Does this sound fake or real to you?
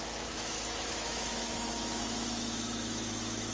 fake